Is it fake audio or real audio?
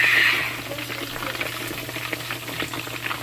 real